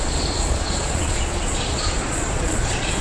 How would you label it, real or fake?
fake